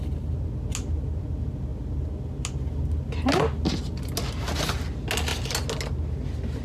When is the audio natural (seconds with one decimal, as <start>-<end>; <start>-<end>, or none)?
0.0-6.6